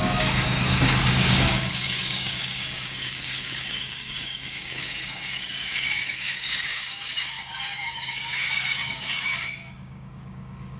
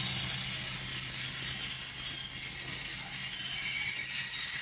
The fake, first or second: first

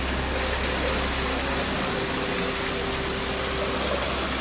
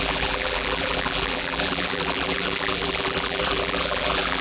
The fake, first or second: second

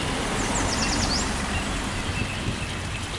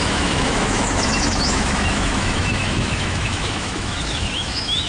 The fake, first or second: second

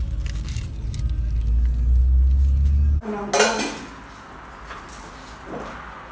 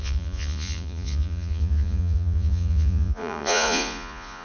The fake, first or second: second